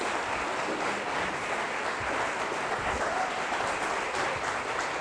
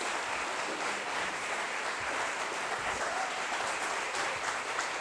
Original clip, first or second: first